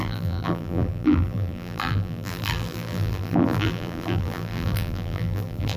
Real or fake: fake